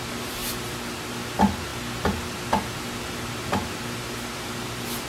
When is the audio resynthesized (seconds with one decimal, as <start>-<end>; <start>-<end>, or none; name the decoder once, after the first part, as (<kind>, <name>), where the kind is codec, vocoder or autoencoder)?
none

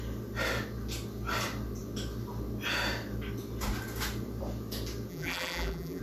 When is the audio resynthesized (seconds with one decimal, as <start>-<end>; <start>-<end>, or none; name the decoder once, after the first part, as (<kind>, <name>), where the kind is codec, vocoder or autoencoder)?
5.1-6.0 (vocoder, BigVGAN v2)

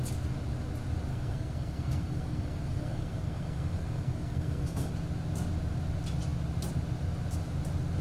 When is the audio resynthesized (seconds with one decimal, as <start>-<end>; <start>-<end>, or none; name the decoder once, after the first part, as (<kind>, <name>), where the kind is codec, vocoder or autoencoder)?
1.1-4.9 (codec, SNAC)

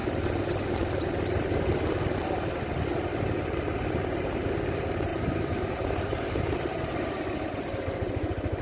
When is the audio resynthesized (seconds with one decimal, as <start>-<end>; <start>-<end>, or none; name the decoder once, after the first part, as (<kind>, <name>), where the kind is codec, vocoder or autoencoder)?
5.1-7.2 (vocoder, BigVGAN v2)

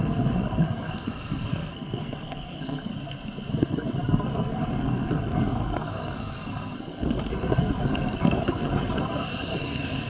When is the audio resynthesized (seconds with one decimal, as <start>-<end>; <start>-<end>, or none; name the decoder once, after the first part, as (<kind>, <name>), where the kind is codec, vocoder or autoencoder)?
0.0-2.9 (codec, SNAC); 3.5-10.1

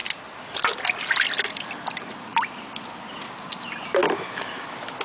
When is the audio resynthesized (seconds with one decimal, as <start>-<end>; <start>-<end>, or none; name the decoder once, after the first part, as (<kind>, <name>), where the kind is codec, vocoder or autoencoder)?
none

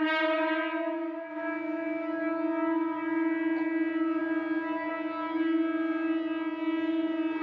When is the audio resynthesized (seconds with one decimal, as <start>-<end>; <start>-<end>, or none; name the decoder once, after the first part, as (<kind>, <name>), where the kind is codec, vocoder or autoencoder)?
none